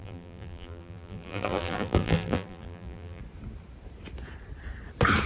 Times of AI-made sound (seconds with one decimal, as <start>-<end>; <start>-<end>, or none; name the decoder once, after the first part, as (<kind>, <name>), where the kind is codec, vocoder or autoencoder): 0.0-3.2 (vocoder, BigVGAN v2)